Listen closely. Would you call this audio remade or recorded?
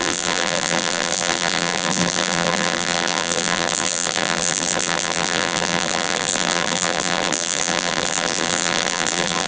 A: remade